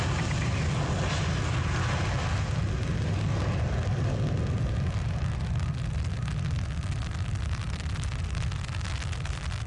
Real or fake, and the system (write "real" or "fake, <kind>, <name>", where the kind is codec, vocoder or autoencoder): real